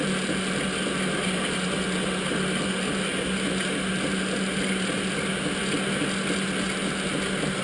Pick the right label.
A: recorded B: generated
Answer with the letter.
A